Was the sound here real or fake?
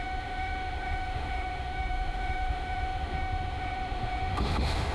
fake